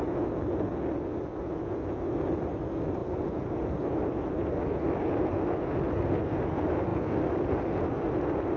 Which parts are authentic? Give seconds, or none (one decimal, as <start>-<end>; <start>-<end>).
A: 0.0-8.6